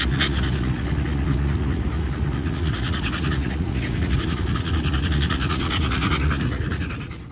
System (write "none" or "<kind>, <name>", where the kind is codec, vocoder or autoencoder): vocoder, Vocos